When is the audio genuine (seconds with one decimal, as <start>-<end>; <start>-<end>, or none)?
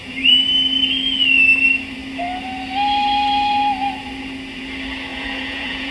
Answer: 0.0-5.1